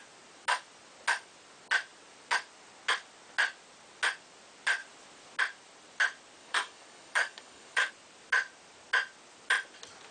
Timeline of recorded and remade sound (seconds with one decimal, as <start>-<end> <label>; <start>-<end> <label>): 0.0-6.4 recorded; 6.4-7.9 remade; 7.9-10.1 recorded